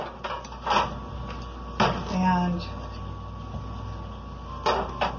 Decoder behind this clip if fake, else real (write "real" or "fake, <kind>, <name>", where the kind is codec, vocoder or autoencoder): real